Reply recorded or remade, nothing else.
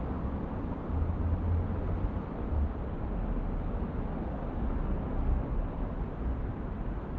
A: recorded